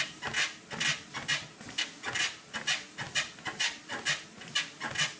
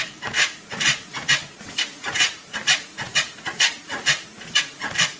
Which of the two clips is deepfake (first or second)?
second